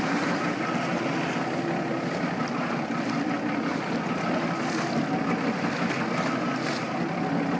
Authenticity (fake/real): real